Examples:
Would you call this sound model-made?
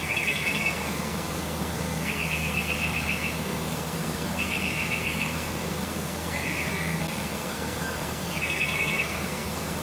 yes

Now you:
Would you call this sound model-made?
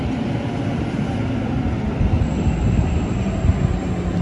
no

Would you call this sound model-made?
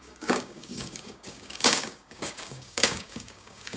yes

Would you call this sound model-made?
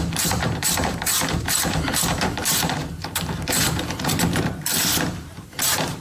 yes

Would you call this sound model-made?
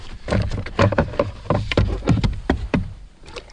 yes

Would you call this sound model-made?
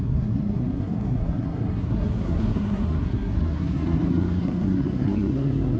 yes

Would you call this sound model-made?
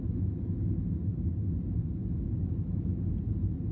no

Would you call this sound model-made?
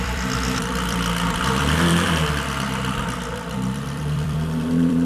yes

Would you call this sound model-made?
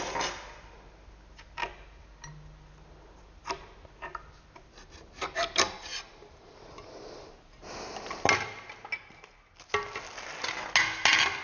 no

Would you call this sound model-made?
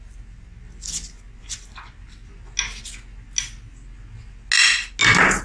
no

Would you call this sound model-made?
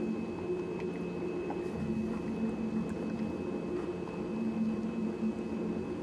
no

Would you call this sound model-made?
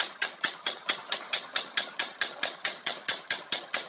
yes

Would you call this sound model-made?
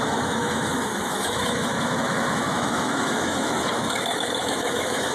yes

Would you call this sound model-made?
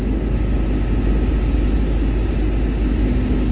no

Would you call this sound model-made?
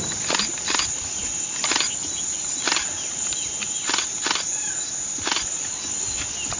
no